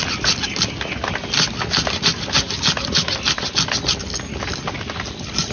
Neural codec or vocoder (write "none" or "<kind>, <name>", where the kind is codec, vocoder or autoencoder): none